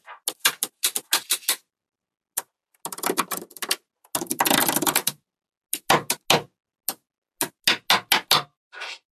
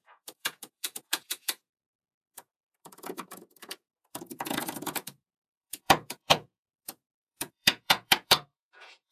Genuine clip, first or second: first